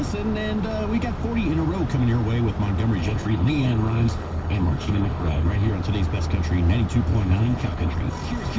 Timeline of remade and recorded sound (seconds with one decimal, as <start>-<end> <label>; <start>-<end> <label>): 0.0-3.0 recorded; 3.0-5.7 remade; 5.7-7.1 recorded; 7.1-8.0 remade; 8.0-8.6 recorded